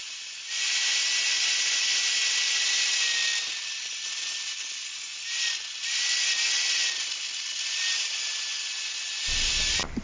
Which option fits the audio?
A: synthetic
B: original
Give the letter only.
B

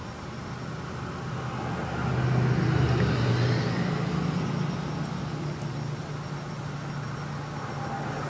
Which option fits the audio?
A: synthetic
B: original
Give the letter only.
B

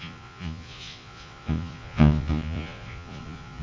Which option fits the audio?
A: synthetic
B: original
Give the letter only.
A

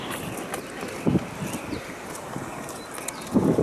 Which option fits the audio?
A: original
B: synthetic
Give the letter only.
A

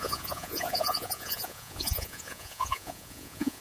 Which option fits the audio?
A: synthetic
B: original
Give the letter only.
A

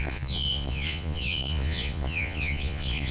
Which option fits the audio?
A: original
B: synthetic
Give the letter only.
B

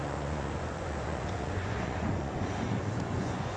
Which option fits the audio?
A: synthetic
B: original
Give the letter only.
A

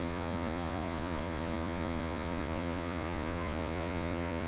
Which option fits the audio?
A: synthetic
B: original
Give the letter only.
A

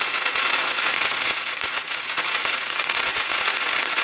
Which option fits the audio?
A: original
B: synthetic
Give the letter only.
B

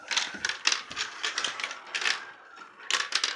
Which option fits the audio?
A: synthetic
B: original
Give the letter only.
B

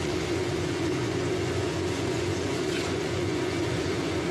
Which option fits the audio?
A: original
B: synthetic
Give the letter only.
B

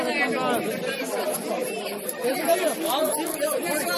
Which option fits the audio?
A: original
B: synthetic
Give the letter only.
A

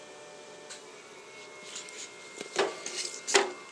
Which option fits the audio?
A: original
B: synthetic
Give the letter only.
A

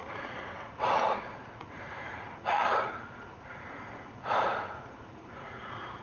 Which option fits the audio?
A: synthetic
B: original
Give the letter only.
A